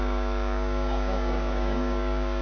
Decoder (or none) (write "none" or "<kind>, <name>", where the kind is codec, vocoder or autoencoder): codec, DAC